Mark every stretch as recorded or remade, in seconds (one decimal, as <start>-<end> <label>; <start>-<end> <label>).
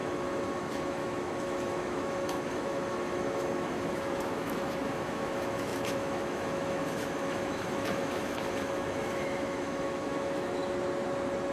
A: 0.0-10.6 remade; 10.6-11.5 recorded